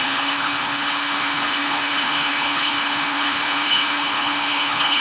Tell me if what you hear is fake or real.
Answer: fake